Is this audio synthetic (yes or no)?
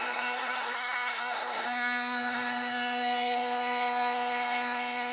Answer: yes